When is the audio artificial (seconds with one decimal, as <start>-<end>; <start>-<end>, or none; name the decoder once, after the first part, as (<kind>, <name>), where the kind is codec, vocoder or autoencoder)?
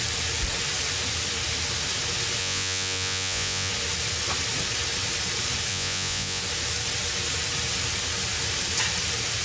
2.4-3.7 (vocoder, Vocos); 5.7-6.4